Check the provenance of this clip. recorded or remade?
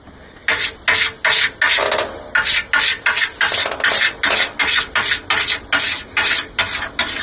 recorded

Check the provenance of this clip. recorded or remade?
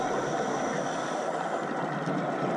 recorded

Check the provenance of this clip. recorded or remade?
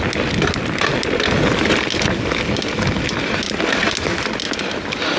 recorded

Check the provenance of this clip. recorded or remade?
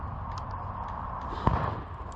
recorded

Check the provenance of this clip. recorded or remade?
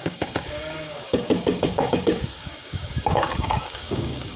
remade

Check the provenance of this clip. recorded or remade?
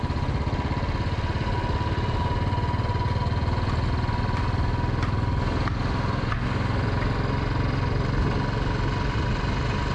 recorded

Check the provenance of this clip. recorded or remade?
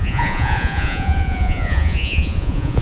remade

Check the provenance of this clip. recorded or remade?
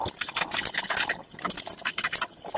recorded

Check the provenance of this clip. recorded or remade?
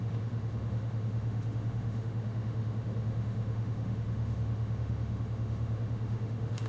remade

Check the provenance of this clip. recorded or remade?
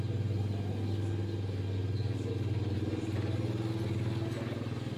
recorded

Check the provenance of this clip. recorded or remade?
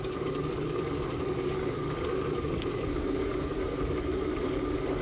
remade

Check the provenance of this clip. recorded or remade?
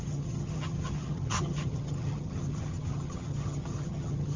remade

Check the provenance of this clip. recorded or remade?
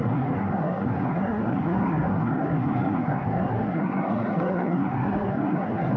remade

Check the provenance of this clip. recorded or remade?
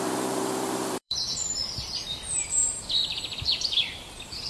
remade